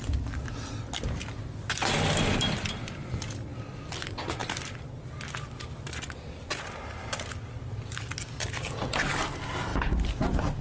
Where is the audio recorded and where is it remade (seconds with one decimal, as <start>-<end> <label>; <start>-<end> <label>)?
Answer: 0.0-10.6 recorded